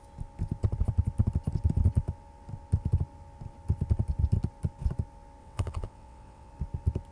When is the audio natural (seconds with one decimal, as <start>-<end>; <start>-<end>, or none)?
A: 0.0-5.4; 6.5-7.1